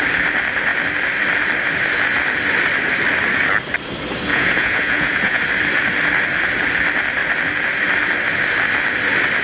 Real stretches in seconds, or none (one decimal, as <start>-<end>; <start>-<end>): 0.0-4.3; 5.4-9.4